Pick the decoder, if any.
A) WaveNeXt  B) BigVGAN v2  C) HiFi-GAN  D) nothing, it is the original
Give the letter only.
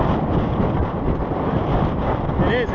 B